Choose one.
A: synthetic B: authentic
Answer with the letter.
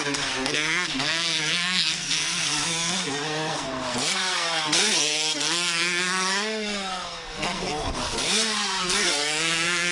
A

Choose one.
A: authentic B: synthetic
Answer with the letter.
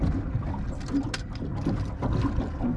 A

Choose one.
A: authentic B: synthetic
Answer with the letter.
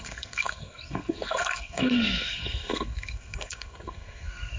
B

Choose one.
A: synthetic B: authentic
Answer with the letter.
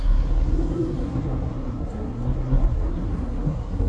A